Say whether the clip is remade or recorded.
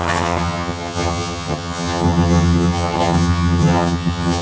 remade